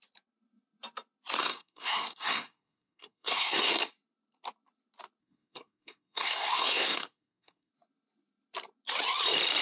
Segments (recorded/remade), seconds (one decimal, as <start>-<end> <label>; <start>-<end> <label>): 0.0-1.4 recorded; 1.4-3.7 remade; 3.7-5.2 recorded; 5.2-7.7 remade; 7.7-9.6 recorded